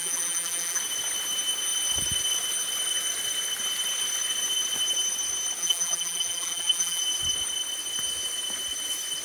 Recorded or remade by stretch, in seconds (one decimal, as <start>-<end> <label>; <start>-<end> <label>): 0.0-0.8 remade; 0.8-5.6 recorded; 5.6-7.0 remade; 7.0-9.2 recorded